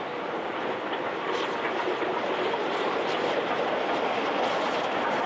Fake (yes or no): no